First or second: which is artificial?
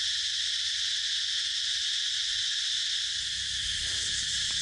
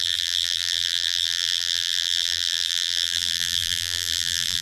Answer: second